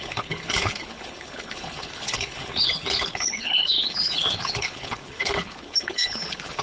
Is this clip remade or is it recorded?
remade